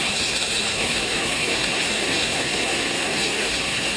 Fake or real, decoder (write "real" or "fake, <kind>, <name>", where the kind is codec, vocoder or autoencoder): fake, codec, SNAC